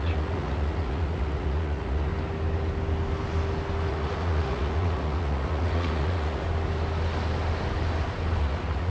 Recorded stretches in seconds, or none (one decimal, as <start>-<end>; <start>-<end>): 2.1-3.9; 6.4-8.4